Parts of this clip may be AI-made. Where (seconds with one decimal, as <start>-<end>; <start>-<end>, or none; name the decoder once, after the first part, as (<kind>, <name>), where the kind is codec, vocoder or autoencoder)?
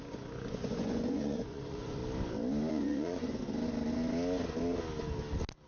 0.0-2.0 (vocoder, Vocos); 2.7-3.4